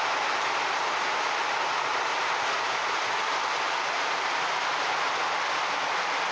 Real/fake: real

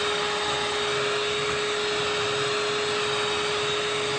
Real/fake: real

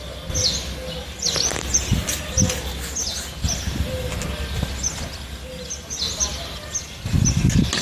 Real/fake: real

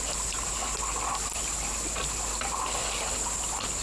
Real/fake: real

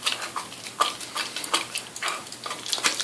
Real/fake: real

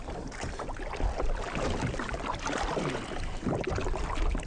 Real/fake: real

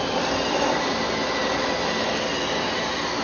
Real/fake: real